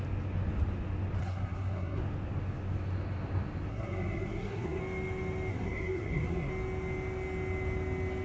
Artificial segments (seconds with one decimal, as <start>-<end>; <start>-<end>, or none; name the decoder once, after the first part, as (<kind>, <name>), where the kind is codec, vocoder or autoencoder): 1.2-2.0 (codec, SNAC); 3.7-4.8; 5.5-6.5

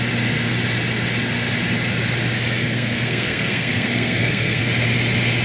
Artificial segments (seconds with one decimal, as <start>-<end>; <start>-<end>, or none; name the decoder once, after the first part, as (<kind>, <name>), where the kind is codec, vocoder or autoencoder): 2.6-4.6 (codec, SNAC)

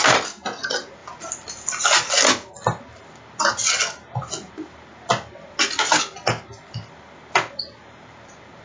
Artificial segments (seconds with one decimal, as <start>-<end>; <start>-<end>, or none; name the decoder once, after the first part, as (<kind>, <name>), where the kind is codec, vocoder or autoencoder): none